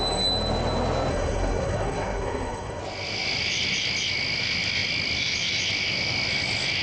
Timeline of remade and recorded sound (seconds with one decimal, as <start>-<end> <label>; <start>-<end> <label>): 0.0-1.1 recorded; 1.1-2.8 remade; 2.8-6.8 recorded